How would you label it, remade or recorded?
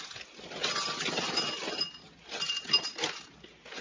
recorded